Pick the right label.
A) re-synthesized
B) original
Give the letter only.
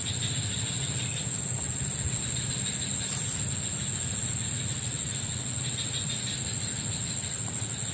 B